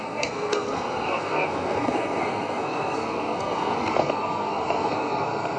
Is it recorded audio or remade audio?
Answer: remade